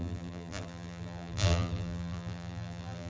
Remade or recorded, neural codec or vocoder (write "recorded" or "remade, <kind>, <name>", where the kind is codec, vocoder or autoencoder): remade, vocoder, BigVGAN v2